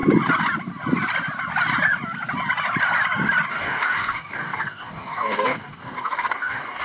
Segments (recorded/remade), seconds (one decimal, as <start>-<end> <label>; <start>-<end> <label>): 0.0-3.5 recorded; 3.5-6.8 remade